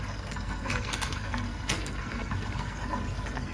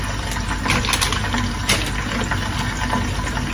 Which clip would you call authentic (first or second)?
second